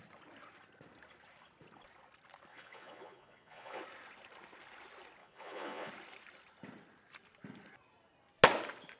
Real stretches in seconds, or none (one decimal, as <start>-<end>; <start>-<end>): 0.0-2.5; 3.8-5.2; 5.9-9.0